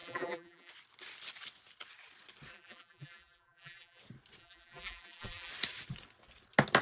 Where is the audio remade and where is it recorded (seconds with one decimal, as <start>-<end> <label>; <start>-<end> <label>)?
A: 0.0-0.7 remade; 0.7-2.5 recorded; 2.5-4.0 remade; 4.0-4.4 recorded; 4.4-5.5 remade; 5.5-6.8 recorded